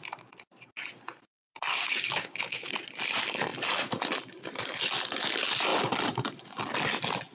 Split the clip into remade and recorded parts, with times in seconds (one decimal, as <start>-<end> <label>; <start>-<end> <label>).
0.0-1.7 recorded; 1.7-2.7 remade; 2.7-7.3 recorded